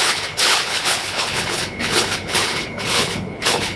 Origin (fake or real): fake